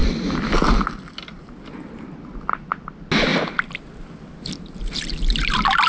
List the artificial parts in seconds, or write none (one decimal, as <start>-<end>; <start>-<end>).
none